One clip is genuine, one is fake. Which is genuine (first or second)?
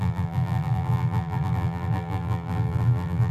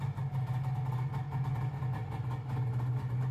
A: second